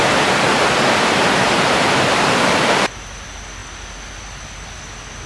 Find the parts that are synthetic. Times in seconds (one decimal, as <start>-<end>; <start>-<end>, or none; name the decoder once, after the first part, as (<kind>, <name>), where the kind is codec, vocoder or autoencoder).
none